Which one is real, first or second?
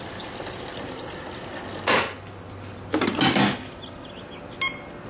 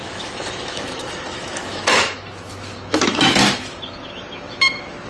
first